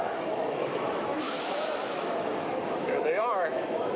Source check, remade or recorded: remade